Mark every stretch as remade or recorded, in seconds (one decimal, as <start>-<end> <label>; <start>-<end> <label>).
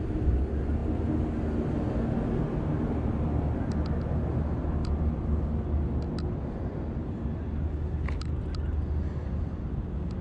0.0-10.2 recorded